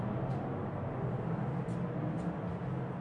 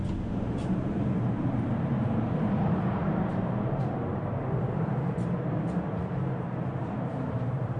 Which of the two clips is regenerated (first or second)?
second